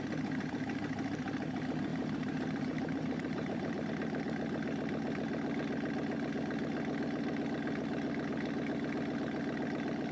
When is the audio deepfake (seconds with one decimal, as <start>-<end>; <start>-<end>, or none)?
1.9-3.9